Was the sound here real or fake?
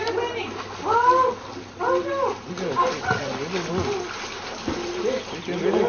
real